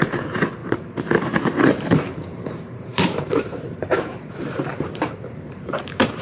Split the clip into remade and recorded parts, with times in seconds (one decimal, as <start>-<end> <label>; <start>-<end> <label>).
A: 0.0-0.6 recorded; 0.6-4.3 remade; 4.3-4.7 recorded; 4.7-6.2 remade